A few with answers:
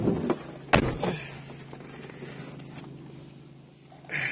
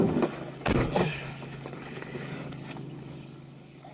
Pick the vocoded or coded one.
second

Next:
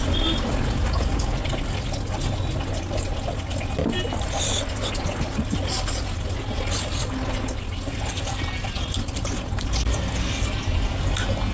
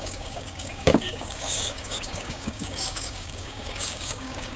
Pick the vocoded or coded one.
second